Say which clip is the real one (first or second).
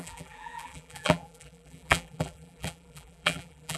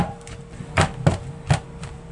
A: second